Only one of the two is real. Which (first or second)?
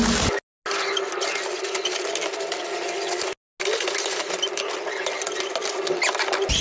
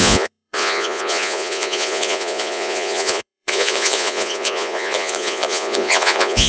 first